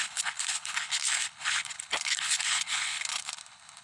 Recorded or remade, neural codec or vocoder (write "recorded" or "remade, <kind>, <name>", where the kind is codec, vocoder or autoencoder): remade, codec, HILCodec